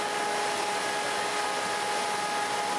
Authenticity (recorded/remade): recorded